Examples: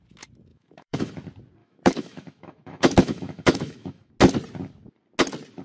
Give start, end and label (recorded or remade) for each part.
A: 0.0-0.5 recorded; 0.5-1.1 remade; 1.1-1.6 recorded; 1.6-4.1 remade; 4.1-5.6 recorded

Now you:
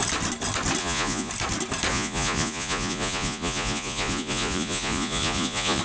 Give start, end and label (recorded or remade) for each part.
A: 0.0-0.8 recorded; 0.8-1.3 remade; 1.3-1.9 recorded; 1.9-5.8 remade